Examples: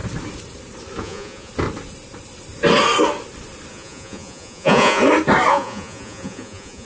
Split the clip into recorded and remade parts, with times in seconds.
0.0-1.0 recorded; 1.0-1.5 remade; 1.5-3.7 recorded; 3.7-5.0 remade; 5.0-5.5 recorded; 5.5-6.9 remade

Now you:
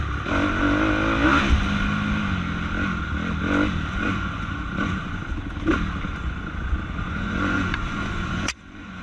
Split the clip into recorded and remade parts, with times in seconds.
0.0-3.9 recorded; 3.9-5.5 remade; 5.5-6.1 recorded; 6.1-9.0 remade

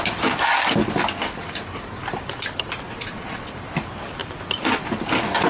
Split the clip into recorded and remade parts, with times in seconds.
0.0-2.9 recorded; 2.9-3.5 remade; 3.5-5.5 recorded

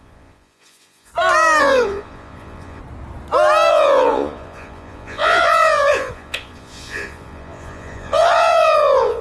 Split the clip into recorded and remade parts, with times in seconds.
0.0-1.1 remade; 1.1-1.6 recorded; 1.6-2.8 remade; 2.8-3.7 recorded; 3.7-9.2 remade

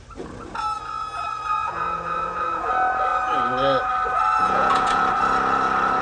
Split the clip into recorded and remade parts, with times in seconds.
0.0-1.5 recorded; 1.5-2.7 remade; 2.7-4.4 recorded; 4.4-5.0 remade; 5.0-6.0 recorded

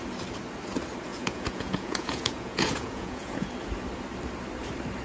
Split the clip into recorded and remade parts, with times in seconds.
0.0-1.1 recorded; 1.1-3.5 remade; 3.5-5.0 recorded